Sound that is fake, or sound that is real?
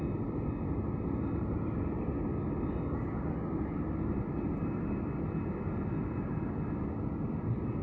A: real